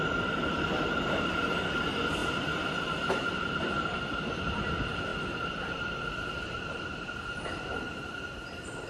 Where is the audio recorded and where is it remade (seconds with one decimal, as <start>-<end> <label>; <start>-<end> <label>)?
0.0-2.2 remade; 2.2-2.7 recorded; 2.7-8.9 remade